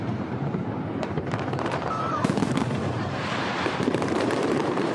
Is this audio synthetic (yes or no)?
yes